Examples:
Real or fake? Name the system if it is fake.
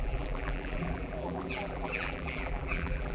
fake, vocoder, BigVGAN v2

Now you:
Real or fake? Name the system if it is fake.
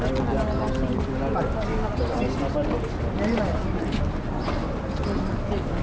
real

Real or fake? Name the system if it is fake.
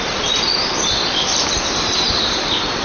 real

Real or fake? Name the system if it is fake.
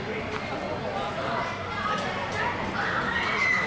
real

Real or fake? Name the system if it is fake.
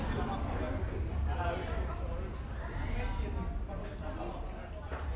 real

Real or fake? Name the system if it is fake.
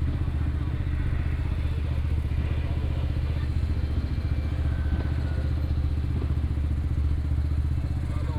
real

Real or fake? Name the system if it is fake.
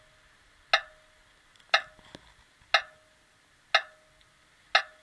real